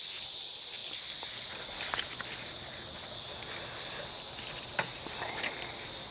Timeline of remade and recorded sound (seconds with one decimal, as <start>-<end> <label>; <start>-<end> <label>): 0.0-6.1 recorded